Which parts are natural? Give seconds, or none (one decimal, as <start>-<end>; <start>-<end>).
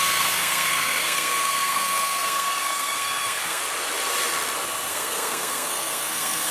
3.6-4.9